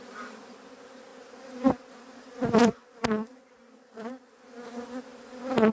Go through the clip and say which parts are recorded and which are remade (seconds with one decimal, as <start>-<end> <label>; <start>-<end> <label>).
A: 0.0-1.1 recorded; 1.1-3.4 remade; 3.4-5.1 recorded; 5.1-5.7 remade